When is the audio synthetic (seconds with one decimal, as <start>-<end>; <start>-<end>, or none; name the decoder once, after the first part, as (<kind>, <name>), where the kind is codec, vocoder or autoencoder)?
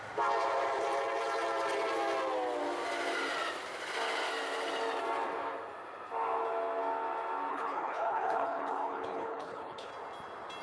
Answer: 7.5-9.9 (codec, HILCodec)